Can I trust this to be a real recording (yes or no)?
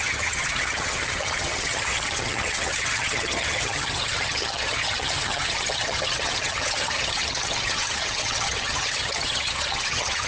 no